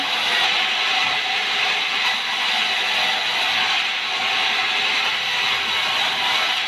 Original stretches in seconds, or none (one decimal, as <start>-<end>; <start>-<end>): 0.0-1.0; 1.7-6.7